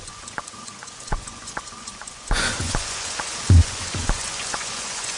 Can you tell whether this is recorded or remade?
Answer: remade